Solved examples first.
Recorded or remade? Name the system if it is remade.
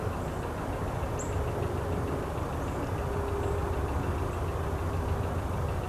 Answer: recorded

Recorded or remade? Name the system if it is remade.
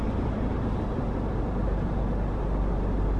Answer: recorded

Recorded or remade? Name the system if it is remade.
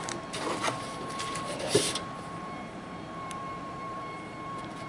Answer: remade, vocoder, BigVGAN v2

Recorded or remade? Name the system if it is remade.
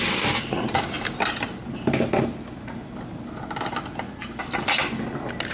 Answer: recorded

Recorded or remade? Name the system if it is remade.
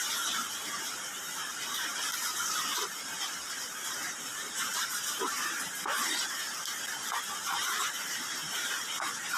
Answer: remade, vocoder, BigVGAN v2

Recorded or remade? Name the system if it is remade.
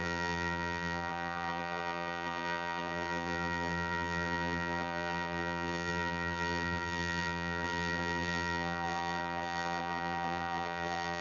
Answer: remade, vocoder, BigVGAN v2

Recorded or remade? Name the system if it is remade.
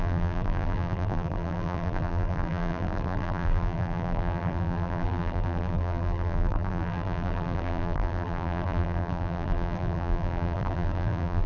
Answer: remade, vocoder, BigVGAN v2